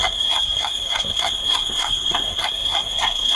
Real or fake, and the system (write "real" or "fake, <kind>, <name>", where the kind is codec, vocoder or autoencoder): fake, codec, SNAC